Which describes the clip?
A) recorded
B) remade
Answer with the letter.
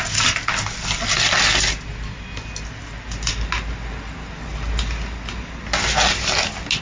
A